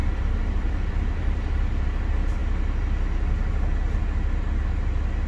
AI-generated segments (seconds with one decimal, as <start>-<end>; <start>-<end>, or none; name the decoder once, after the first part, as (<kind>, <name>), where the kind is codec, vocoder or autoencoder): 0.0-1.8 (vocoder, BigVGAN v2)